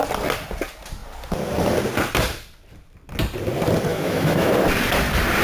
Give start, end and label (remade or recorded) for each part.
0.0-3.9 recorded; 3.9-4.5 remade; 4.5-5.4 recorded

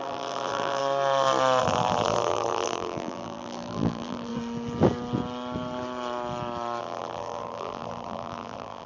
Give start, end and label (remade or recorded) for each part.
0.0-0.8 remade; 0.8-1.6 recorded; 1.6-4.3 remade; 4.3-6.8 recorded; 6.8-8.9 remade

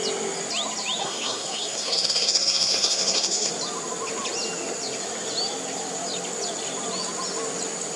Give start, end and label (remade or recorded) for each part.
0.0-1.0 recorded; 1.0-3.5 remade; 3.5-8.0 recorded

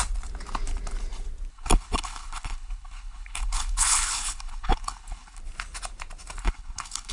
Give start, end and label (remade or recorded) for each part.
0.0-1.5 recorded; 1.5-5.4 remade; 5.4-6.4 recorded; 6.4-7.1 remade

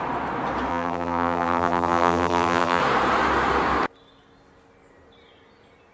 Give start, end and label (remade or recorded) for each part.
0.0-0.7 recorded; 0.7-2.8 remade; 2.8-5.9 recorded

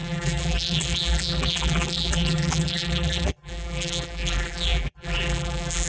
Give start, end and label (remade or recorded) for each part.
0.0-5.9 remade

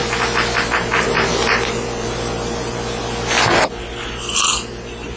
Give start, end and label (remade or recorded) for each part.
0.0-5.2 recorded

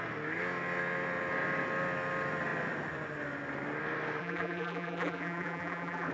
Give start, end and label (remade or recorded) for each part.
0.0-4.2 recorded; 4.2-6.1 remade